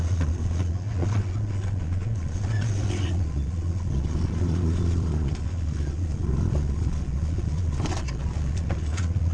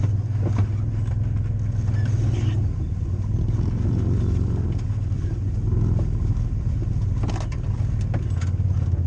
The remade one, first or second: first